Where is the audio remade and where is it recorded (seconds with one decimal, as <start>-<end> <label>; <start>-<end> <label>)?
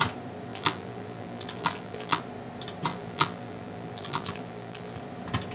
0.0-0.5 recorded; 0.5-2.2 remade; 2.2-2.9 recorded; 2.9-5.0 remade; 5.0-5.5 recorded